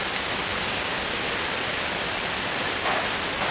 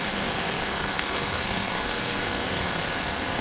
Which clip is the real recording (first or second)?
first